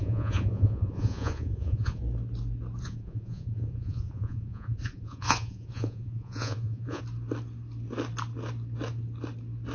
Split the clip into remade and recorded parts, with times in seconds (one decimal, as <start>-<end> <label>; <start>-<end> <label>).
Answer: 0.0-2.0 remade; 2.0-2.8 recorded; 2.8-7.0 remade; 7.0-9.7 recorded